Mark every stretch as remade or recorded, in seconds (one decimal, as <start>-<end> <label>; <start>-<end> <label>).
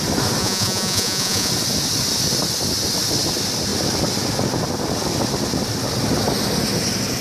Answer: 0.0-0.4 recorded; 0.4-1.5 remade; 1.5-7.2 recorded